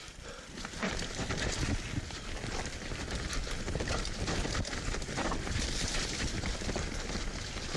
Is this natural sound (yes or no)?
yes